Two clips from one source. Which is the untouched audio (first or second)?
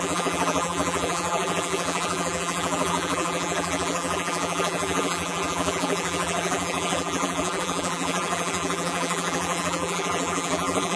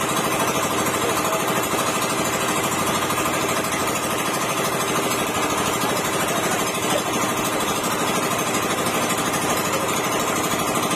second